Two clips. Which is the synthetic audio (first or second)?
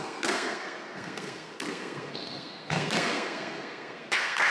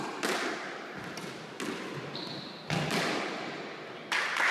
first